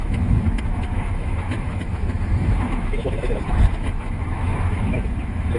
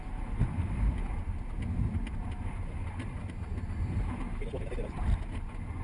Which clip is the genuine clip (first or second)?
second